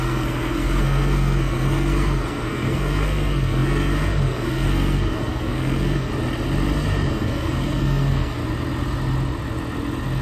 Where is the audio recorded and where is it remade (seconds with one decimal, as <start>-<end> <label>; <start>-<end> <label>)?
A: 0.0-6.1 remade; 6.1-7.1 recorded; 7.1-8.4 remade; 8.4-10.2 recorded